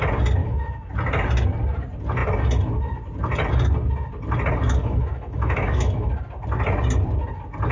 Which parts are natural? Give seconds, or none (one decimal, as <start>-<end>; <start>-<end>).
0.0-0.4; 0.9-4.8; 6.1-7.7